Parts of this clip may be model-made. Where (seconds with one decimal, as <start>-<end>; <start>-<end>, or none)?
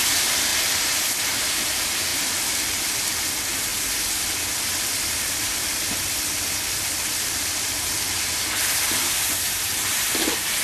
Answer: 0.0-0.5; 1.2-2.1; 2.8-3.7; 4.3-10.6